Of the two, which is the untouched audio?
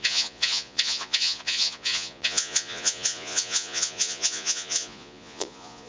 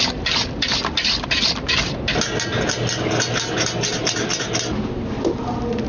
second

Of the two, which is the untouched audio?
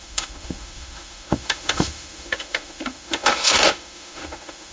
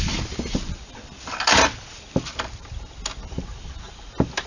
second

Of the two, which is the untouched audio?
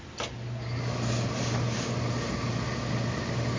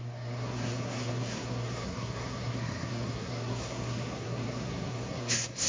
first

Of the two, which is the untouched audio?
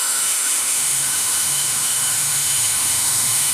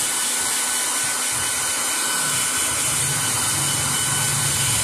second